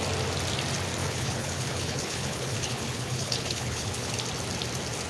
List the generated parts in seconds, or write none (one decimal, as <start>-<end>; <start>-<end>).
1.0-4.1